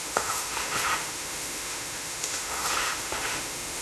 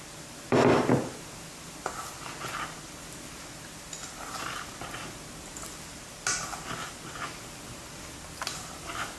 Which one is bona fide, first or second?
second